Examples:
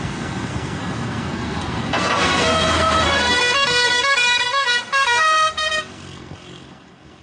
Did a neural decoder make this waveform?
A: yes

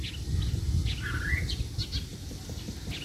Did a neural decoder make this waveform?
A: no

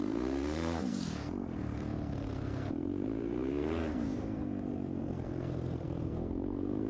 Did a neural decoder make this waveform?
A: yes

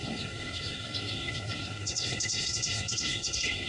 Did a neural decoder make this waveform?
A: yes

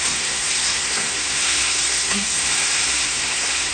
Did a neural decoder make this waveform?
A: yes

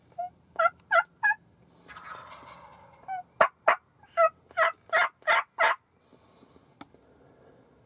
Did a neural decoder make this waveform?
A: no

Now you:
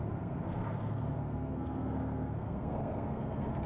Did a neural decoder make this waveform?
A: yes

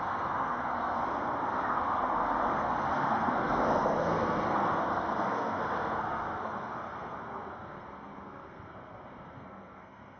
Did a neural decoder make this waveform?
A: yes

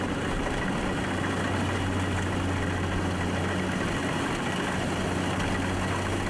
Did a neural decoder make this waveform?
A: no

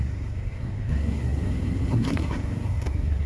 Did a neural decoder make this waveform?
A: yes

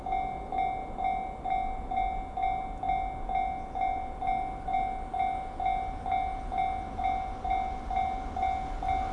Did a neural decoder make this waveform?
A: no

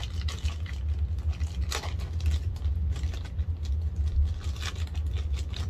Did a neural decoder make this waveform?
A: no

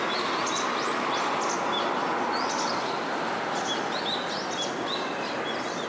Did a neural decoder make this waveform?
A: no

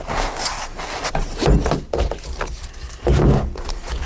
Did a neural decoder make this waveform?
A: no